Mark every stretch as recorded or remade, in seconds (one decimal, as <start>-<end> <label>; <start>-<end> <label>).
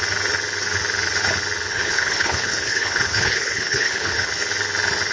0.0-1.7 recorded; 1.7-4.3 remade; 4.3-5.1 recorded